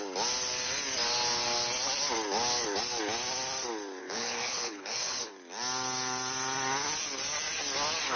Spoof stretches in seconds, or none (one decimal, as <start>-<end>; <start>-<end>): 4.0-5.3